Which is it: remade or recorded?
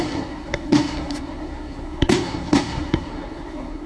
remade